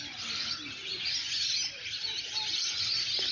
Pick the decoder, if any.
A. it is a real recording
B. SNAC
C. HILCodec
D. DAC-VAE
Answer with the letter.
A